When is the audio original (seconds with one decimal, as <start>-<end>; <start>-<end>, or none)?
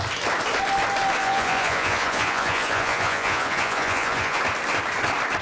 0.0-1.2; 4.4-5.4